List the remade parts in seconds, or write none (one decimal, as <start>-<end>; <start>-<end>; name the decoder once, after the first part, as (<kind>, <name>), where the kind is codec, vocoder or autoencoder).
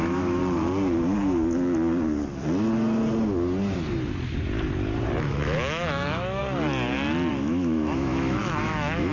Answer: 0.0-0.4 (autoencoder, DAC-VAE); 5.2-6.4; 7.3-9.1